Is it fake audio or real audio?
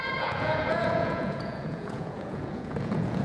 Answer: fake